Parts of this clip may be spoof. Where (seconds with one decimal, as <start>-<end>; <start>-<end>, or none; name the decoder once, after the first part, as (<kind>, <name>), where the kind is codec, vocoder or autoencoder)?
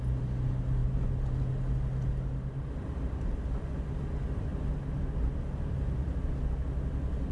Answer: none